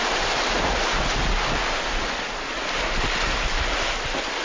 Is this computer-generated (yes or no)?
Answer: no